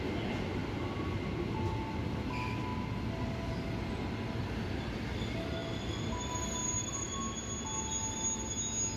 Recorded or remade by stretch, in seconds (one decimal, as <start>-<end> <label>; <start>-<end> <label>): 0.0-9.0 recorded